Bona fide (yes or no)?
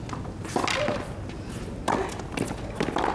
yes